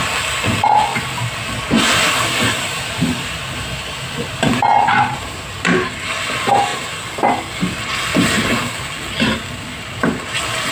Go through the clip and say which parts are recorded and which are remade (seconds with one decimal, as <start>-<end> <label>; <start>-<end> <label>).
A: 0.0-6.7 recorded; 6.7-7.3 remade; 7.3-8.1 recorded; 8.1-8.6 remade; 8.6-10.7 recorded